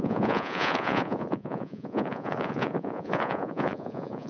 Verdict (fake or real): fake